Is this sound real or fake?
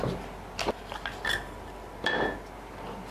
real